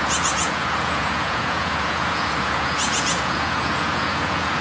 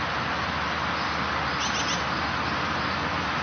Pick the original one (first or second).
second